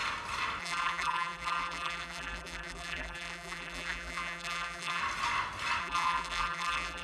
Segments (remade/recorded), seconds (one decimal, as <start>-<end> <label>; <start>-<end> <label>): 0.0-0.6 recorded; 0.6-5.0 remade; 5.0-5.8 recorded; 5.8-7.0 remade